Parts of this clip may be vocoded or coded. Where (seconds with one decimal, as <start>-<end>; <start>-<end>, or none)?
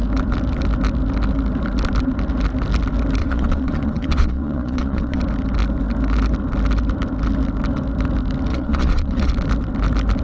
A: 3.2-5.2; 8.5-9.3